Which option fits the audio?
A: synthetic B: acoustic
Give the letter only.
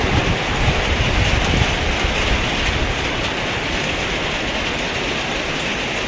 B